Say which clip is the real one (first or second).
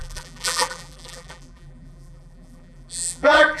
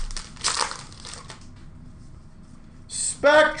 second